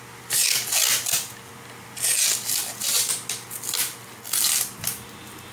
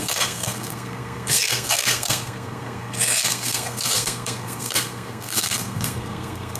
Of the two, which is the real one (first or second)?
first